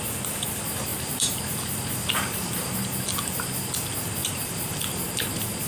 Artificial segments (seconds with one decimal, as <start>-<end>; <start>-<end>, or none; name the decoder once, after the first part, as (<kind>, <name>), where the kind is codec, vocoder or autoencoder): 0.9-1.4 (vocoder, BigVGAN v2); 2.0-2.8; 4.2-4.9